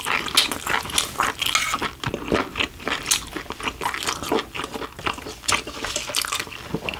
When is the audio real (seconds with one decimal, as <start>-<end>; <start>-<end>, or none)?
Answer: 0.0-7.0